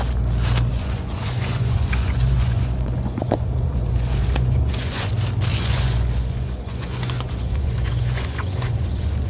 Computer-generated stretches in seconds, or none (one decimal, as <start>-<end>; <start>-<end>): 0.7-5.1; 5.5-9.3